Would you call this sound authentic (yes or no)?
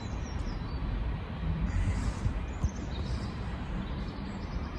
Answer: no